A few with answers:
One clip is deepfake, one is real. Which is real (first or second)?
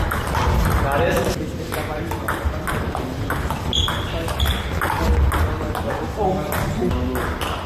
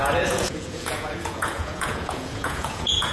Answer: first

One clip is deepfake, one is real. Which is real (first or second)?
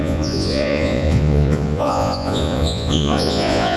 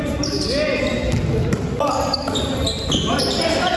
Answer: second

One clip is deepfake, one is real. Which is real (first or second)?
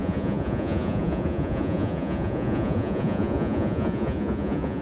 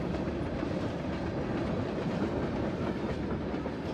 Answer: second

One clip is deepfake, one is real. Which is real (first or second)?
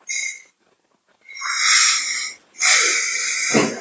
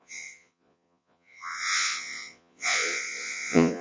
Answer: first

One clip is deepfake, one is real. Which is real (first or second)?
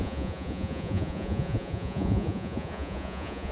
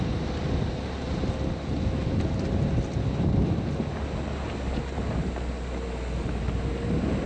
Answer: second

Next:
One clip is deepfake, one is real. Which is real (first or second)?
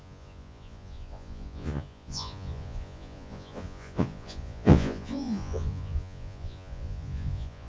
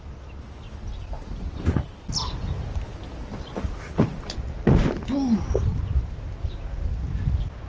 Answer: second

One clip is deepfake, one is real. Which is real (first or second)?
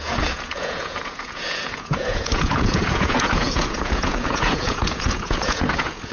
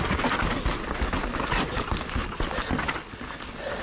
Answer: second